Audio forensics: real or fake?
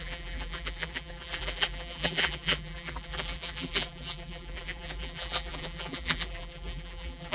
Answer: fake